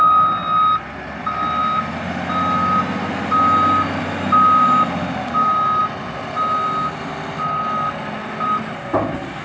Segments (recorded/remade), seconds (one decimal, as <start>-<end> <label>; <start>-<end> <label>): 0.0-9.4 recorded